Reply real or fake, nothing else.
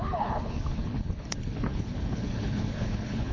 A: fake